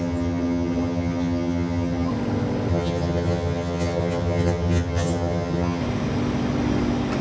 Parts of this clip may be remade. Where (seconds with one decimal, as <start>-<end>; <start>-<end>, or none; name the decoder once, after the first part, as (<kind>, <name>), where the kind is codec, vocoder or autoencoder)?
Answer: 0.0-2.1 (vocoder, HiFi-GAN); 2.7-5.8